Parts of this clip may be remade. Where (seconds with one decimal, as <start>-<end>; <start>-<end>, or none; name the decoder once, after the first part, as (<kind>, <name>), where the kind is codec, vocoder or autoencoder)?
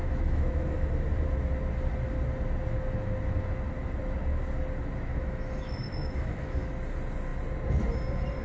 0.0-0.9 (autoencoder, DAC-VAE); 5.1-6.7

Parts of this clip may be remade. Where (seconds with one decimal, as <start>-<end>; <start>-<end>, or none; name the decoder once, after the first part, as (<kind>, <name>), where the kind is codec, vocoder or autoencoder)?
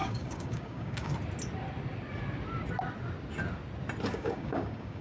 0.0-1.1 (codec, DAC); 4.1-5.0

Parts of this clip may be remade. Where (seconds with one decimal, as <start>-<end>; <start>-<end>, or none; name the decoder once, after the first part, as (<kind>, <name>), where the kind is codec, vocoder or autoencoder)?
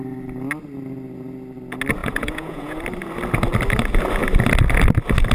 2.0-2.8 (vocoder, Vocos)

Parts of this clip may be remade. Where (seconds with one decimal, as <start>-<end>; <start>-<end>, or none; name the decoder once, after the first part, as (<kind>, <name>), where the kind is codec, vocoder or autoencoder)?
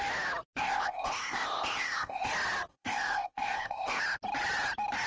0.6-2.3 (codec, ZipCodec); 2.7-4.0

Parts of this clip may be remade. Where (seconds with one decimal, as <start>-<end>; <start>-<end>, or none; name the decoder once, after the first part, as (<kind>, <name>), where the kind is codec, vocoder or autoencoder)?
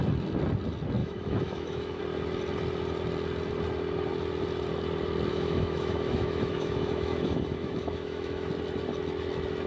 1.0-2.0 (autoencoder, DAC-VAE); 5.3-8.5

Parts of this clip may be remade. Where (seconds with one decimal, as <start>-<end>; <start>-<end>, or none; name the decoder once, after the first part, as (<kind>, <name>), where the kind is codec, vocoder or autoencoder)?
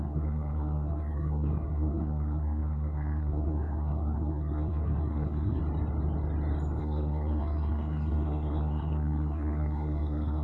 0.0-5.6 (codec, SNAC); 6.8-10.4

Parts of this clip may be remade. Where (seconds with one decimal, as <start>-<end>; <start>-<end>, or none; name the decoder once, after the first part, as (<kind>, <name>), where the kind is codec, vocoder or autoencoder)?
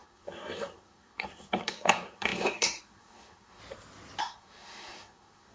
0.0-3.6 (codec, SNAC); 4.2-5.5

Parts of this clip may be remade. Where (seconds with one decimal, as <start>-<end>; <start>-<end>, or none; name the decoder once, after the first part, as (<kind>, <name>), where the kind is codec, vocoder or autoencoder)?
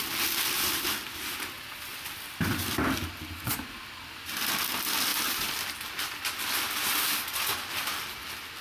none